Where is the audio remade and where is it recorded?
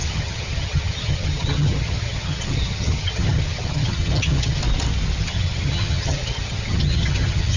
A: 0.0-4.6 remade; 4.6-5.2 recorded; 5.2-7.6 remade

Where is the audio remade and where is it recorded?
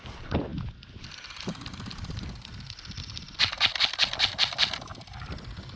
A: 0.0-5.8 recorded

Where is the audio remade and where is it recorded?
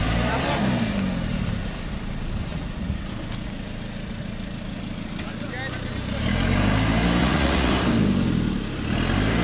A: 0.0-2.5 recorded; 2.5-3.0 remade; 3.0-7.2 recorded; 7.2-7.7 remade; 7.7-9.4 recorded